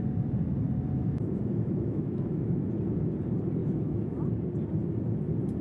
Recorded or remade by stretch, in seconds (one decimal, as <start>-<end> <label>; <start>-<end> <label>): 0.0-1.0 recorded; 1.0-2.7 remade; 2.7-3.6 recorded; 3.6-4.2 remade; 4.2-5.6 recorded

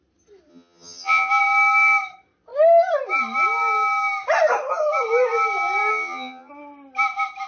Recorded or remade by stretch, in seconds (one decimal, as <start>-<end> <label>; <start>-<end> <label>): 0.0-0.5 recorded; 0.5-1.3 remade; 1.3-5.9 recorded; 5.9-6.5 remade; 6.5-7.5 recorded

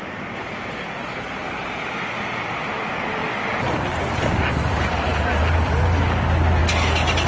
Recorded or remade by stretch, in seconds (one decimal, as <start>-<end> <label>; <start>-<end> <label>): 0.0-7.3 recorded

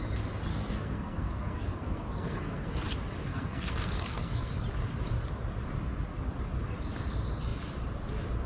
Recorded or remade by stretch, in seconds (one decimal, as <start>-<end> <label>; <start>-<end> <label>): 0.0-0.5 recorded; 0.5-2.7 remade; 2.7-3.3 recorded; 3.3-4.5 remade; 4.5-8.5 recorded

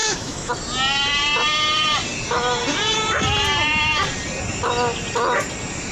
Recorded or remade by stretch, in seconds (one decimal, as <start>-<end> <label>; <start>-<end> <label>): 0.0-0.5 remade; 0.5-5.9 recorded

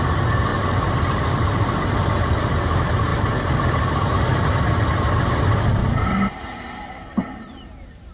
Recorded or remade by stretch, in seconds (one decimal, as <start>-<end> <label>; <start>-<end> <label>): 0.0-0.5 recorded; 0.5-1.3 remade; 1.3-3.1 recorded; 3.1-4.6 remade; 4.6-5.8 recorded; 5.8-6.7 remade; 6.7-8.1 recorded

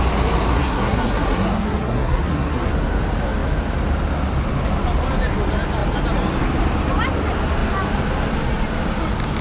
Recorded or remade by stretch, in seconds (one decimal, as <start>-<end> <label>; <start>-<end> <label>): 0.0-0.5 recorded; 0.5-2.7 remade; 2.7-9.4 recorded

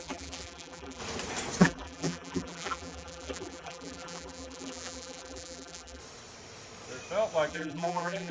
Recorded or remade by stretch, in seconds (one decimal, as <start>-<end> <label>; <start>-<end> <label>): 0.0-1.0 remade; 1.0-1.6 recorded; 1.6-6.0 remade; 6.0-7.5 recorded; 7.5-8.3 remade